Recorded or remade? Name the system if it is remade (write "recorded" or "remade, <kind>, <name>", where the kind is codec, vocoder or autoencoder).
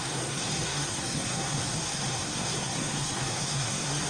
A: remade, codec, SNAC